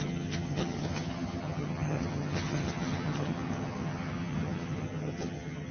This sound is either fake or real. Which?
fake